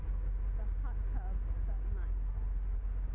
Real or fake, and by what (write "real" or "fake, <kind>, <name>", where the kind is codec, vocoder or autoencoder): real